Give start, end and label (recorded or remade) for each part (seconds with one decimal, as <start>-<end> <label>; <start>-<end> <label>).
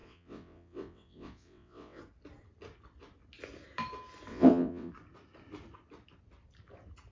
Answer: 0.0-2.0 remade; 2.0-4.3 recorded; 4.3-4.9 remade; 4.9-7.1 recorded